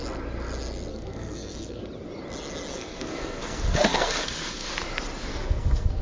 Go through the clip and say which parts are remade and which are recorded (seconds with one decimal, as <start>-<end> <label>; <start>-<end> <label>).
0.0-0.9 recorded; 0.9-1.8 remade; 1.8-2.7 recorded; 2.7-4.7 remade; 4.7-5.3 recorded; 5.3-6.0 remade

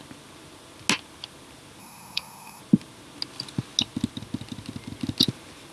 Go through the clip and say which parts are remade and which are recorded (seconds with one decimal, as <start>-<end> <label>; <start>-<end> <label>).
0.0-1.8 recorded; 1.8-2.6 remade; 2.6-5.7 recorded

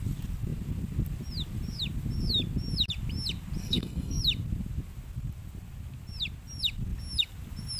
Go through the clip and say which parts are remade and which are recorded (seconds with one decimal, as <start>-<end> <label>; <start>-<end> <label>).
0.0-3.6 recorded; 3.6-4.2 remade; 4.2-7.8 recorded